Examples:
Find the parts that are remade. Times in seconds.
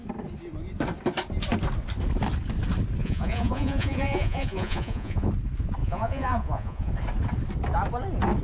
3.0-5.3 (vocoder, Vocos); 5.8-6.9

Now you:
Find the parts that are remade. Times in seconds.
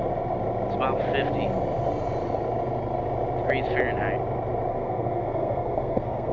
4.7-6.3 (codec, SNAC)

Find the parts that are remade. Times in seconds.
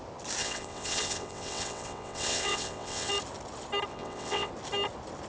0.4-3.1 (vocoder, WaveNeXt); 3.9-4.5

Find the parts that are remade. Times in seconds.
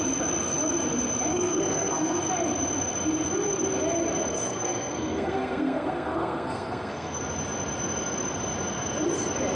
1.3-2.2 (codec, SNAC); 4.3-7.2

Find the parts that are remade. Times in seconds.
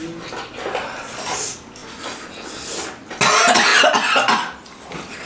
none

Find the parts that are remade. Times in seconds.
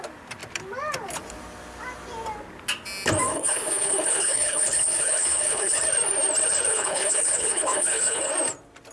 3.3-5.8 (codec, HILCodec); 6.7-8.3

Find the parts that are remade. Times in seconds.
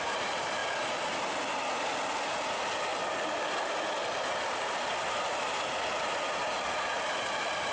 none